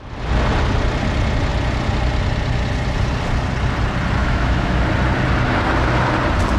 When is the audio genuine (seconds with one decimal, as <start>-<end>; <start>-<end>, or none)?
0.0-4.2; 4.8-6.6

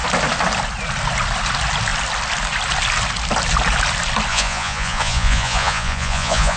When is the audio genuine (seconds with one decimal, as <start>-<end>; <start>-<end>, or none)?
0.0-4.3

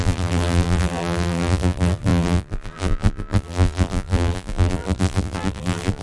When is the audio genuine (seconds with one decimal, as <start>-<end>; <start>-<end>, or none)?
none

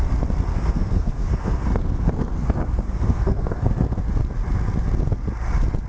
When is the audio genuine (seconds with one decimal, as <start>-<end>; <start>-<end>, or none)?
0.0-0.5; 4.0-5.9

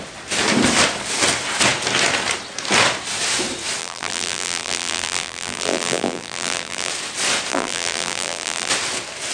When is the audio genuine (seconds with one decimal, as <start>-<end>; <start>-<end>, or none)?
0.0-3.8; 6.9-7.5; 8.7-9.3

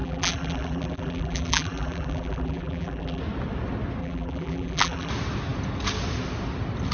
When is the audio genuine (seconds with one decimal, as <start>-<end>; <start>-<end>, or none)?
3.2-4.0; 5.1-6.9

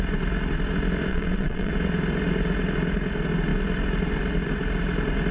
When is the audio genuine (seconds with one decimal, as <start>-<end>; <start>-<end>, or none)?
0.0-1.1; 1.7-5.3